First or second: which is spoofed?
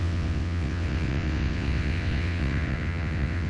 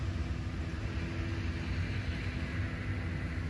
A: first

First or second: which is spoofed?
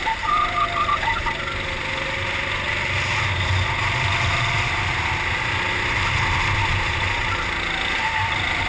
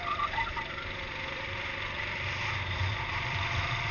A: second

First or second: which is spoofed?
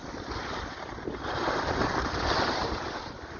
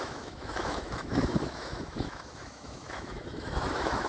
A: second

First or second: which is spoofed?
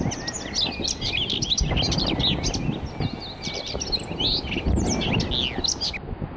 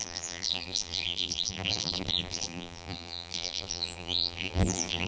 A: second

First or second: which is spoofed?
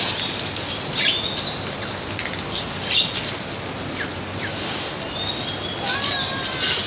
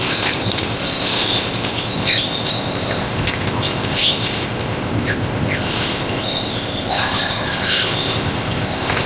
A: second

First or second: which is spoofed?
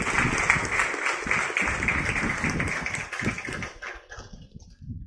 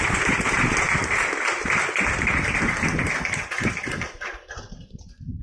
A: second